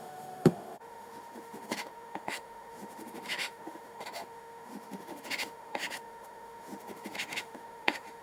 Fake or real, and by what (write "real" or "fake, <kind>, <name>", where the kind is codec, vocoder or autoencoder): fake, autoencoder, DAC-VAE